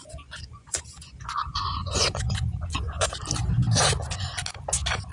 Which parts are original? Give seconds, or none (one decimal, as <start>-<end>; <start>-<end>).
3.1-5.1